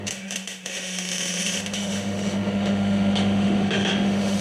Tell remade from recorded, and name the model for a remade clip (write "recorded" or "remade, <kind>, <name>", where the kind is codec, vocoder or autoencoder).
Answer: remade, autoencoder, DAC-VAE